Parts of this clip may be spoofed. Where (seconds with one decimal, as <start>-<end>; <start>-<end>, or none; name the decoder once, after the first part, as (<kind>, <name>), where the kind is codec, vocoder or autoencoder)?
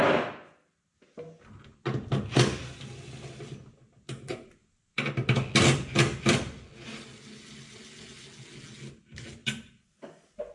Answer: 4.6-5.1 (vocoder, BigVGAN v2)